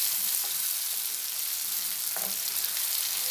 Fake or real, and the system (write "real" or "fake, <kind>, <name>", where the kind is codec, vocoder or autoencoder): real